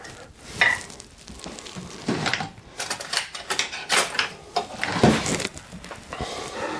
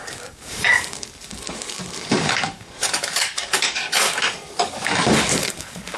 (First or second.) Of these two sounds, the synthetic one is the second